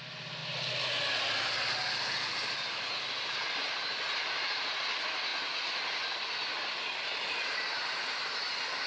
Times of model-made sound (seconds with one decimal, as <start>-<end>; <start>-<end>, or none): none